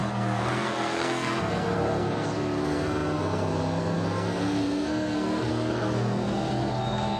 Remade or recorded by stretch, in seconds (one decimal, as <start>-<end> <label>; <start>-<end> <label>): 0.0-7.2 remade